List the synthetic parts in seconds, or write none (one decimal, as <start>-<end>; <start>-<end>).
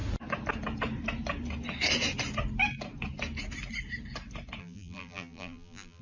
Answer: 4.6-6.0